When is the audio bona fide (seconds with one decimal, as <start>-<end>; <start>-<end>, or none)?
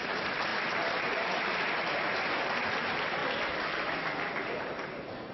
3.2-4.3